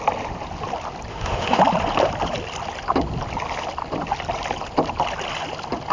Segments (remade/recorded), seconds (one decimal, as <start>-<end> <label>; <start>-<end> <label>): 0.0-1.1 recorded; 1.1-1.6 remade; 1.6-5.9 recorded

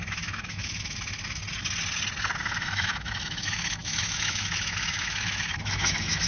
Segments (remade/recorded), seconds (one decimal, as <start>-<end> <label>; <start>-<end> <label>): 0.0-1.4 remade; 1.4-2.4 recorded; 2.4-6.3 remade

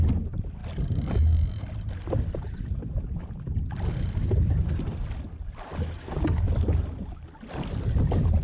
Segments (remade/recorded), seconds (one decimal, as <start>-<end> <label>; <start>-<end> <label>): 0.0-8.4 recorded